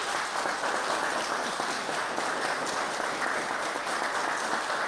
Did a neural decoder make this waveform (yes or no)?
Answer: no